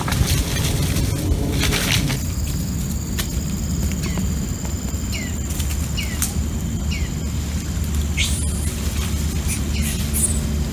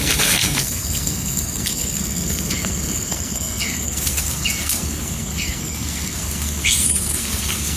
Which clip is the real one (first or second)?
first